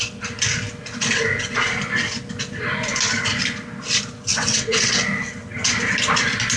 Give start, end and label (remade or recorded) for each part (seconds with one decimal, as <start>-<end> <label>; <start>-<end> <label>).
0.0-4.3 recorded; 4.3-5.0 remade; 5.0-6.6 recorded